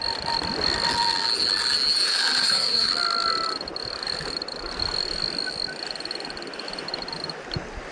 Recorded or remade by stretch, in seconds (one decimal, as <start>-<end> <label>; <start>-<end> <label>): 0.0-2.4 recorded; 2.4-2.9 remade; 2.9-7.9 recorded